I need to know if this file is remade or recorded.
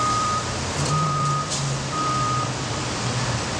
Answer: remade